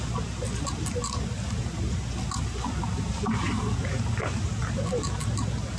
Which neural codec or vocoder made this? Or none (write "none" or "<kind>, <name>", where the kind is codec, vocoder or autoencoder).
none